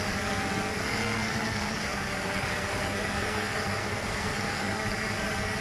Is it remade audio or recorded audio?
remade